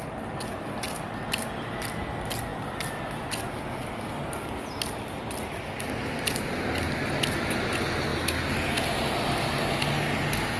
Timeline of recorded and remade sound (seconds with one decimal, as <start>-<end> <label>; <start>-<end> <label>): 0.0-10.6 recorded